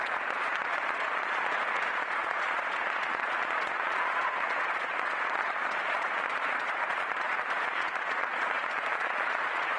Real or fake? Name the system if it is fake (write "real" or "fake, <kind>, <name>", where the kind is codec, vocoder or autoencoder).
fake, vocoder, Vocos